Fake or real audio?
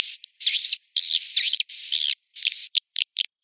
fake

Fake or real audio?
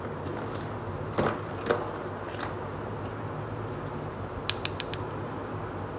real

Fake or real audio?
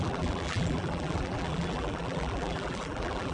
fake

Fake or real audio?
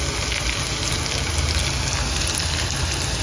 real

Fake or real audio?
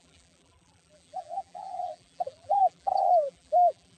fake